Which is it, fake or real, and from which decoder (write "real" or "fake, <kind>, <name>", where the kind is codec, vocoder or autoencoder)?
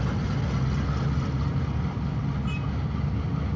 real